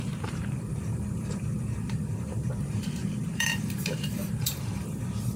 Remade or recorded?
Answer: remade